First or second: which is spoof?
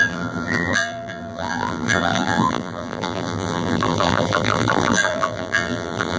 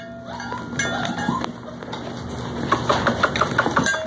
first